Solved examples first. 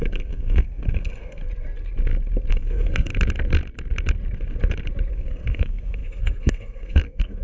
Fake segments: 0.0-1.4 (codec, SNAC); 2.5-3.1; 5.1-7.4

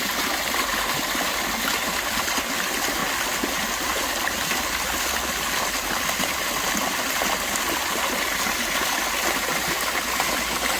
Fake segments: none

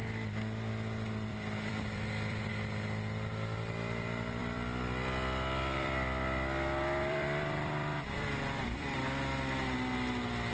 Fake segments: 1.3-2.5 (vocoder, BigVGAN v2); 4.4-9.0